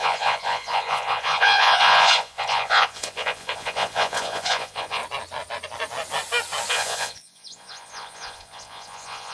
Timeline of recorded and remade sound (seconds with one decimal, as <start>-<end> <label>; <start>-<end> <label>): 0.0-5.0 remade; 5.0-6.7 recorded; 6.7-9.3 remade